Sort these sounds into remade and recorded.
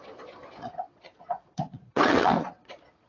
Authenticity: remade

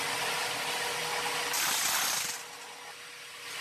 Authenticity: recorded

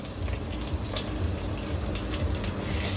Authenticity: recorded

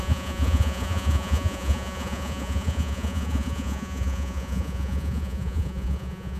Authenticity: remade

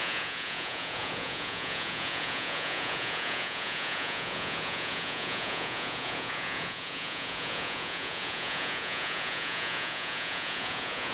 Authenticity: remade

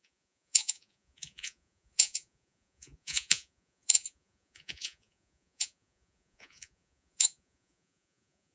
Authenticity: remade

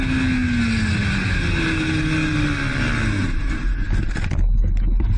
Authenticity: recorded